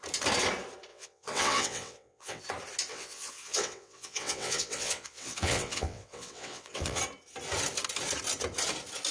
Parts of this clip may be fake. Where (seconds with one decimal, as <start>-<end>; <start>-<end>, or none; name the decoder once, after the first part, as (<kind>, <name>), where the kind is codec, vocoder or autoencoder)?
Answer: 0.9-2.4 (vocoder, WaveNeXt); 2.9-7.0